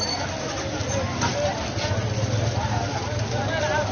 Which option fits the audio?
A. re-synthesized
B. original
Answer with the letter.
B